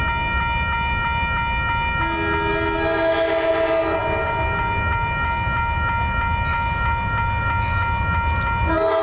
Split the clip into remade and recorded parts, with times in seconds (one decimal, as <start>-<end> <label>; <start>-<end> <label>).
0.0-9.0 recorded

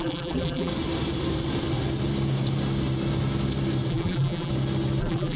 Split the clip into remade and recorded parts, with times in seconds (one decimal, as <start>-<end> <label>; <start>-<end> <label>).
0.0-0.7 remade; 0.7-3.9 recorded; 3.9-4.5 remade; 4.5-5.0 recorded; 5.0-5.4 remade

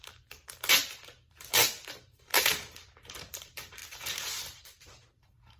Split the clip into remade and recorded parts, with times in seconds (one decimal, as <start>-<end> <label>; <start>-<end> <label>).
0.0-5.6 remade